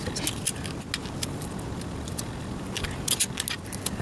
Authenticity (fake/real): real